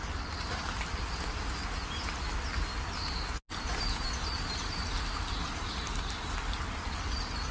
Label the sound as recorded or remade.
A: recorded